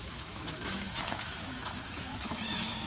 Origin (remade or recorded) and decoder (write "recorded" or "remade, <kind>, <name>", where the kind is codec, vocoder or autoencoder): remade, autoencoder, DAC-VAE